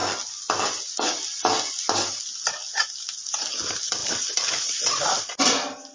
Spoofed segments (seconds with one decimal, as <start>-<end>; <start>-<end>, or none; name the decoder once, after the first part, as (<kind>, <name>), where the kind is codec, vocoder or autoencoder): none